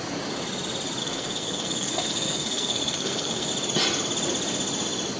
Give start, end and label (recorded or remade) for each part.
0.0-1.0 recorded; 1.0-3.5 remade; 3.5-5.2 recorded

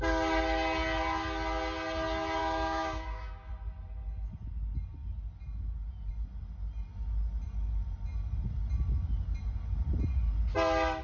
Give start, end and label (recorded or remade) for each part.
0.0-2.4 recorded; 2.4-3.5 remade; 3.5-11.0 recorded

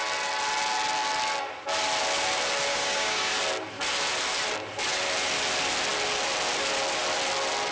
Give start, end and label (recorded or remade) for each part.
0.0-2.7 recorded; 2.7-3.3 remade; 3.3-7.7 recorded

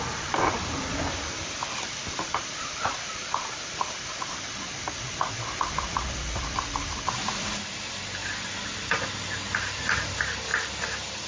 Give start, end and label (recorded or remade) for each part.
0.0-11.3 recorded

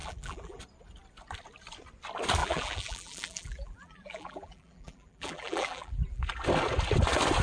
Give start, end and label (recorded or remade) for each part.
0.0-0.6 remade; 0.6-2.4 recorded; 2.4-6.2 remade; 6.2-7.4 recorded

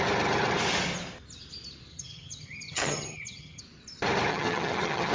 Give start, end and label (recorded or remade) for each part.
0.0-1.9 recorded; 1.9-3.6 remade; 3.6-4.3 recorded; 4.3-5.1 remade

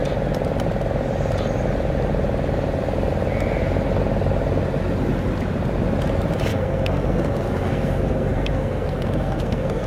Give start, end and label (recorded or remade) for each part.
0.0-6.5 recorded; 6.5-9.9 remade

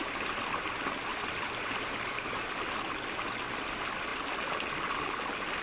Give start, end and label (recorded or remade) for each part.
0.0-1.1 recorded; 1.1-2.4 remade; 2.4-5.6 recorded